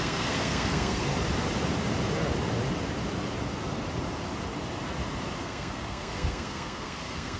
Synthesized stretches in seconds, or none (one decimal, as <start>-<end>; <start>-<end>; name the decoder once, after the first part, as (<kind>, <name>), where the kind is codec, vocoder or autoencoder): 0.0-1.1 (codec, SNAC); 5.4-7.4